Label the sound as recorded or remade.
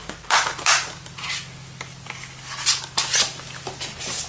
recorded